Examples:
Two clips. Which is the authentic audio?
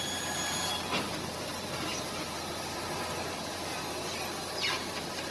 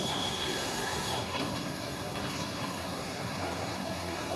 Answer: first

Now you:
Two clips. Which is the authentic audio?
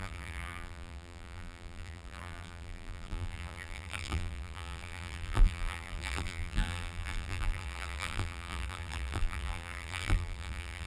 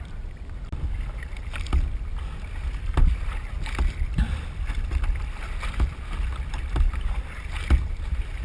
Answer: second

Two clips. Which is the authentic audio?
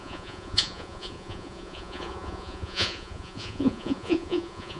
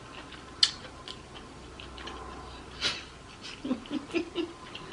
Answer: second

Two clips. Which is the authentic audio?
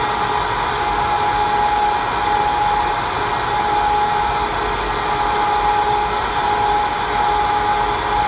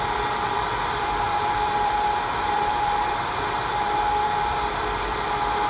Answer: first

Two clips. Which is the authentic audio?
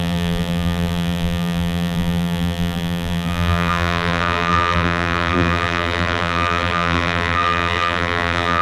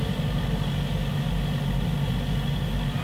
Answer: second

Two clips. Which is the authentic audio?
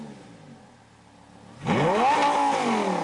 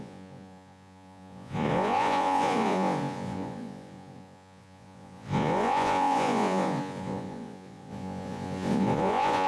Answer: first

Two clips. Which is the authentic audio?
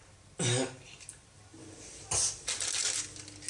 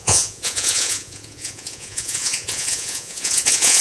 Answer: first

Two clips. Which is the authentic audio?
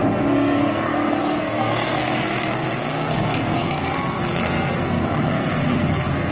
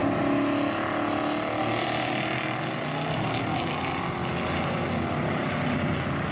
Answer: second